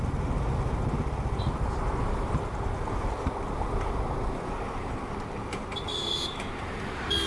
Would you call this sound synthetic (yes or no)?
no